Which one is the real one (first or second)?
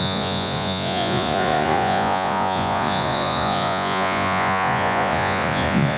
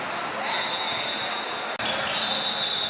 second